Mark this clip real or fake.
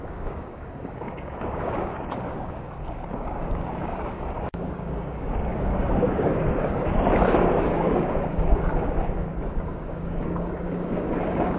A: fake